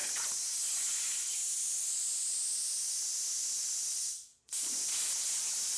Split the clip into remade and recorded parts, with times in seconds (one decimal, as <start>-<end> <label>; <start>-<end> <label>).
0.0-5.8 recorded